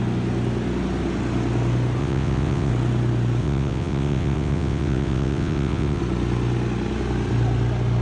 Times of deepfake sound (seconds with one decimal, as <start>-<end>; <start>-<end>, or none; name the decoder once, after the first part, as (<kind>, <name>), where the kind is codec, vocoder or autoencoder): 2.0-2.7 (vocoder, WaveNeXt); 3.4-6.0